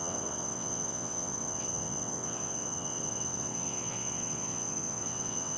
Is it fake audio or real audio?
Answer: fake